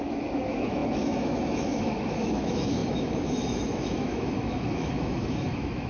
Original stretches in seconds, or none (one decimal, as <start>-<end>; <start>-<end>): none